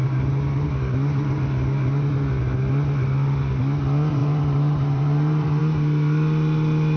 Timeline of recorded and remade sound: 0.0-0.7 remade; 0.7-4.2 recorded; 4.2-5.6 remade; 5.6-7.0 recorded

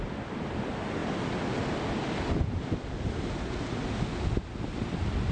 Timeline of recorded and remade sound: 0.0-5.3 recorded

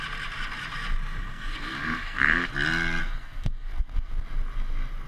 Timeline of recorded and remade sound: 0.0-1.2 recorded; 1.2-2.5 remade; 2.5-3.0 recorded; 3.0-4.1 remade; 4.1-5.1 recorded

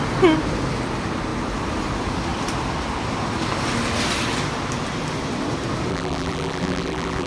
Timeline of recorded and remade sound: 0.0-5.9 recorded; 5.9-7.3 remade

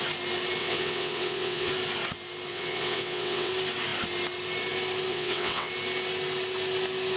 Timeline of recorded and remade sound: 0.0-0.6 recorded; 0.6-1.7 remade; 1.7-2.5 recorded; 2.5-3.5 remade; 3.5-5.1 recorded; 5.1-5.7 remade; 5.7-7.2 recorded

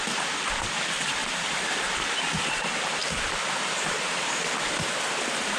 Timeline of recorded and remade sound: 0.0-1.2 recorded; 1.2-2.5 remade; 2.5-3.0 recorded; 3.0-4.7 remade; 4.7-5.6 recorded

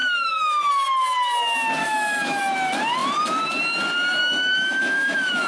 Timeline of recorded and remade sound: 0.0-0.7 remade; 0.7-1.8 recorded; 1.8-2.4 remade; 2.4-4.2 recorded; 4.2-5.5 remade

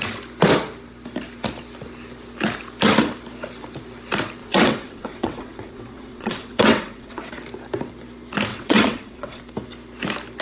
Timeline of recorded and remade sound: 0.0-4.4 recorded; 4.4-7.3 remade; 7.3-8.5 recorded; 8.5-9.4 remade; 9.4-10.4 recorded